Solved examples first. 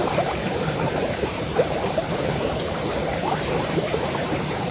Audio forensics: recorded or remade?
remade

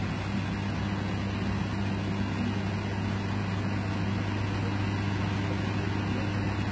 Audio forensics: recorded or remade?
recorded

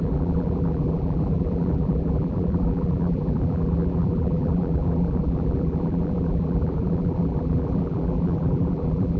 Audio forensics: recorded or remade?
remade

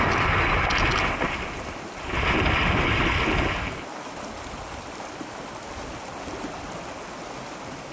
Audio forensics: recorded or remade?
recorded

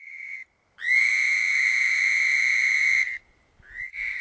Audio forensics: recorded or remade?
remade